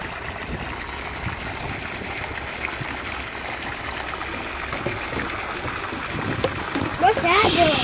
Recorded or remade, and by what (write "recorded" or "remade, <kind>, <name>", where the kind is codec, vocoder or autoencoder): recorded